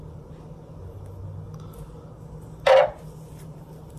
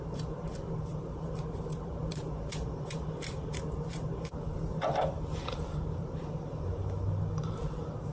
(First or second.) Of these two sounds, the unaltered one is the first